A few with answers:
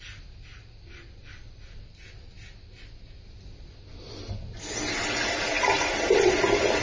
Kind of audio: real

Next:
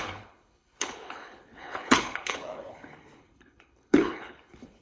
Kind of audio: fake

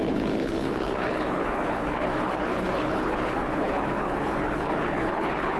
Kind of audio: fake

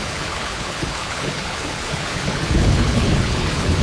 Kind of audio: fake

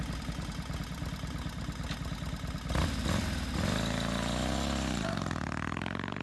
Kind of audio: real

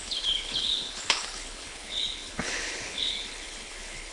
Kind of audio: fake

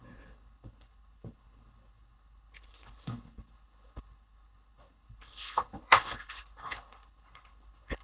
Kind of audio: fake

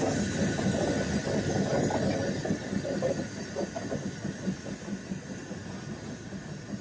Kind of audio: real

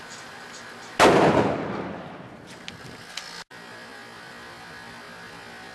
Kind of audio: real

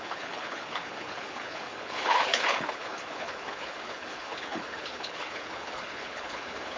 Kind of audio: fake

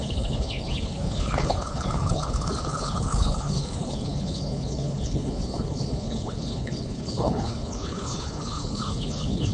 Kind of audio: fake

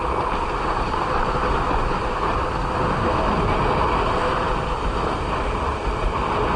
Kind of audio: real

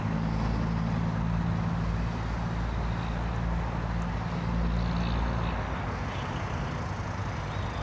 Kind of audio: real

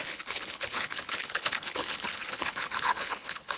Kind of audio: fake